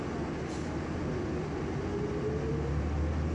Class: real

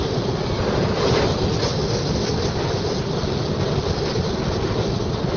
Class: real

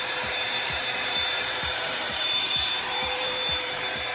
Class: fake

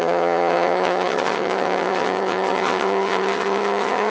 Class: fake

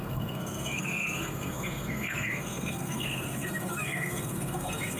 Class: fake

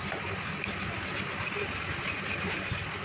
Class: real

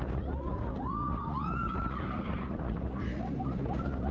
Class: fake